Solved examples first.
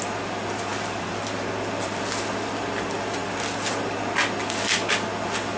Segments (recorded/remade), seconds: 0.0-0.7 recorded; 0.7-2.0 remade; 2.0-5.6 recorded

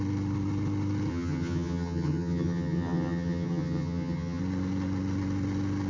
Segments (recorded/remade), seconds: 0.0-1.1 recorded; 1.1-4.4 remade; 4.4-5.9 recorded

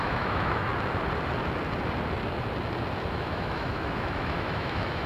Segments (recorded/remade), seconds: 0.0-0.7 remade; 0.7-3.1 recorded; 3.1-5.1 remade

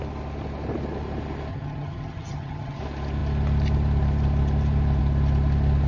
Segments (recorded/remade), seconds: 0.0-1.5 recorded; 1.5-2.8 remade; 2.8-5.9 recorded